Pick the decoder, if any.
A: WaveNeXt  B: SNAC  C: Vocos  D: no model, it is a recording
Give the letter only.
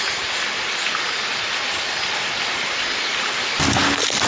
D